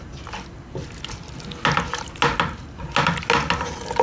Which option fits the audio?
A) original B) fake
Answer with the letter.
A